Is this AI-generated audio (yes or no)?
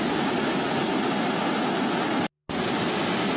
no